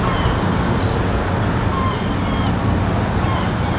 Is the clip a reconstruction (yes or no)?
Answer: no